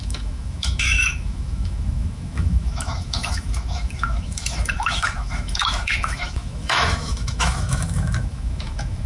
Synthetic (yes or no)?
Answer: yes